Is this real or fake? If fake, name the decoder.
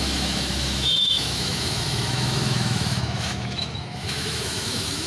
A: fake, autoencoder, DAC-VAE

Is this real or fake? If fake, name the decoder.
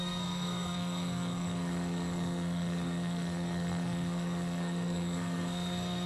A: fake, codec, SNAC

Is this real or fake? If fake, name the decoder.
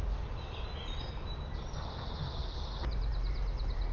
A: real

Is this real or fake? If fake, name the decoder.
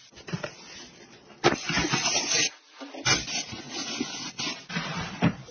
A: real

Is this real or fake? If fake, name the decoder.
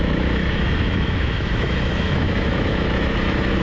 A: fake, autoencoder, DAC-VAE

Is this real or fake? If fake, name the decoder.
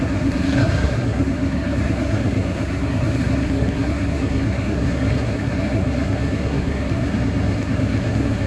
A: fake, codec, SNAC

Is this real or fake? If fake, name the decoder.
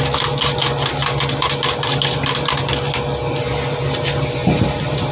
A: real